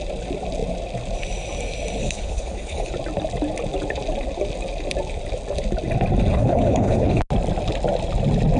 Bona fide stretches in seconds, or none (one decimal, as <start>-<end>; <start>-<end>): 0.0-2.0; 2.9-6.3; 7.2-8.6